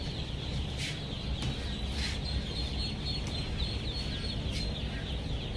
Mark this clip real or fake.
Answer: real